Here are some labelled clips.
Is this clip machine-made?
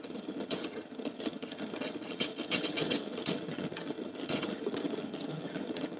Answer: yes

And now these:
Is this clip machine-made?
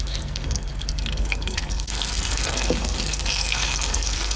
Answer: yes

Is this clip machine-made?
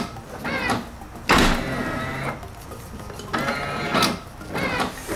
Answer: no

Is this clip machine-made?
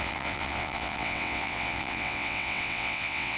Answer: yes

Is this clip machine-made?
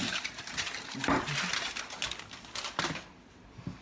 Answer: no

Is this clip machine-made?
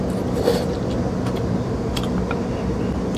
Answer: no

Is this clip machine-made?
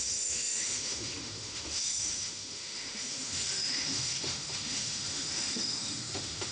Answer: yes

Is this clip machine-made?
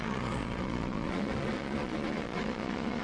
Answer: yes